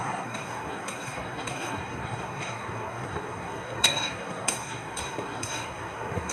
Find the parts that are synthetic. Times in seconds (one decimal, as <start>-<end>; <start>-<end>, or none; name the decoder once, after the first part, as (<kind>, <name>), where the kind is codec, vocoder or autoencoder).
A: 0.0-6.3 (codec, SNAC)